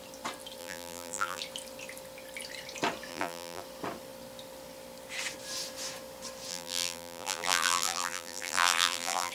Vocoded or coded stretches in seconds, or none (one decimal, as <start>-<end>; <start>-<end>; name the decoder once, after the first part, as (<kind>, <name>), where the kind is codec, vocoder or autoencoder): 0.6-1.4 (vocoder, BigVGAN v2); 3.1-3.6; 6.5-9.3